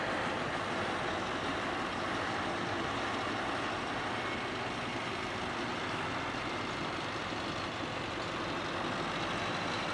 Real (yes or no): yes